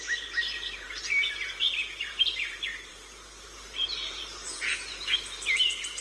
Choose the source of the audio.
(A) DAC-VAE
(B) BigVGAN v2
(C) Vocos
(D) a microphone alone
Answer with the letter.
B